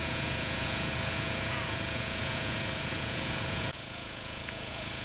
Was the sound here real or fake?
fake